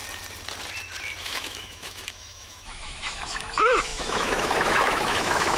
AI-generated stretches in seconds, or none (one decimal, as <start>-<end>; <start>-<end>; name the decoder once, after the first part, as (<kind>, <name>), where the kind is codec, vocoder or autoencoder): 1.2-5.6 (autoencoder, DAC-VAE)